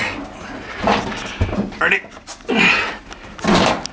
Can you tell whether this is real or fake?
real